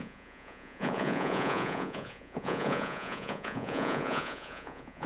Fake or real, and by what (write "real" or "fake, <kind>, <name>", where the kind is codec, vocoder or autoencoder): fake, vocoder, Vocos